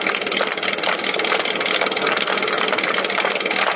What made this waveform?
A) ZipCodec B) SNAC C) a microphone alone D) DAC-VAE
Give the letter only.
C